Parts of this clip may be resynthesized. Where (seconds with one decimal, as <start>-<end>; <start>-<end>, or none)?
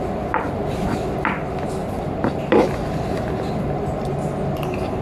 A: none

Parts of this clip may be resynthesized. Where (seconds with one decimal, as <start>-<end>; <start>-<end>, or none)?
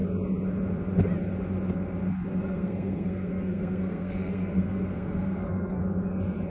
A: 2.4-5.8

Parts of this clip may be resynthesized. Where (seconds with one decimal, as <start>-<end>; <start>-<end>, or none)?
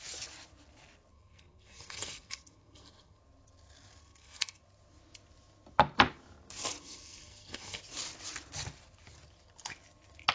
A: 1.1-3.2; 4.0-4.6; 6.8-7.8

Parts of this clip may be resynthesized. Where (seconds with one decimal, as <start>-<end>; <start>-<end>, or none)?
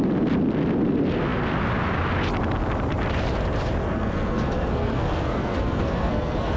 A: 3.8-6.6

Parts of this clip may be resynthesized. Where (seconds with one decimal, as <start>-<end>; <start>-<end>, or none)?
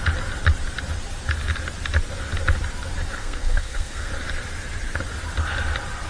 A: 3.2-4.1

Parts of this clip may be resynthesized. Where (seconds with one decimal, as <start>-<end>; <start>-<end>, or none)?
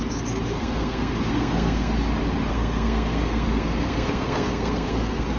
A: 0.5-1.9; 2.5-5.4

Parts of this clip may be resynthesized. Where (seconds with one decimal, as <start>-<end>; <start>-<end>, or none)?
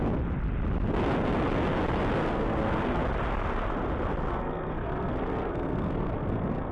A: 2.2-3.0; 4.3-6.7